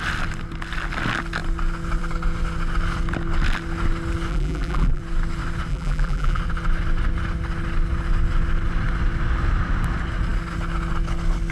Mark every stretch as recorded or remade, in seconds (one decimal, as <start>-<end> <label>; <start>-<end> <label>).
0.0-4.3 recorded; 4.3-5.0 remade; 5.0-5.7 recorded; 5.7-6.4 remade; 6.4-11.5 recorded